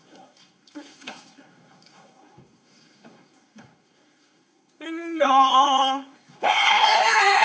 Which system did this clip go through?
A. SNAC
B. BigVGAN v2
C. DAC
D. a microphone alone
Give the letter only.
A